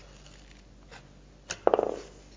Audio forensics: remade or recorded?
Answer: recorded